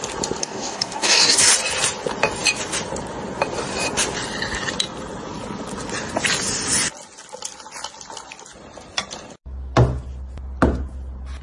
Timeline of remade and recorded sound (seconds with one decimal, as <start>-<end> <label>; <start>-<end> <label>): 0.0-0.4 recorded; 0.4-1.5 remade; 1.5-11.4 recorded

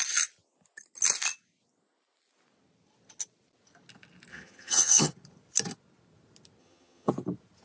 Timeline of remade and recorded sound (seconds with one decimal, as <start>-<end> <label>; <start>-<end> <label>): 0.0-4.3 recorded; 4.3-5.1 remade; 5.1-6.6 recorded; 6.6-7.1 remade; 7.1-7.6 recorded

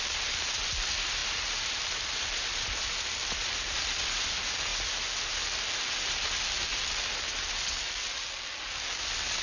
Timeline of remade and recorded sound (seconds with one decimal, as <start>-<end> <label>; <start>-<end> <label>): 0.0-1.2 recorded; 1.2-4.3 remade; 4.3-9.4 recorded

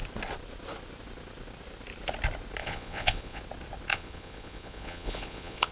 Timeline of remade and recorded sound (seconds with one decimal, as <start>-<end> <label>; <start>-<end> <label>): 0.0-2.6 recorded; 2.6-3.4 remade; 3.4-3.9 recorded; 3.9-5.7 remade

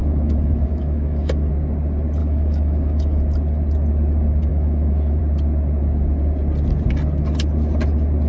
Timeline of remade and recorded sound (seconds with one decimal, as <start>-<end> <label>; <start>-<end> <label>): 0.0-1.5 remade; 1.5-2.2 recorded; 2.2-3.2 remade; 3.2-4.5 recorded; 4.5-5.2 remade; 5.2-8.3 recorded

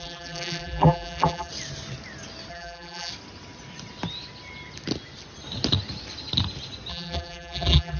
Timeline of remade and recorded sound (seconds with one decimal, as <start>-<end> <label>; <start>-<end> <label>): 0.0-1.5 remade; 1.5-2.5 recorded; 2.5-3.1 remade; 3.1-6.9 recorded; 6.9-8.0 remade